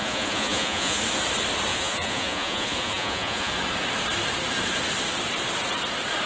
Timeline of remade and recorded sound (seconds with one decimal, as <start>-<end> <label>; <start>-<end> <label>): 0.0-1.0 remade; 1.0-1.7 recorded; 1.7-3.5 remade; 3.5-6.3 recorded